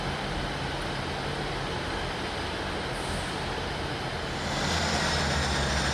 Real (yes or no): yes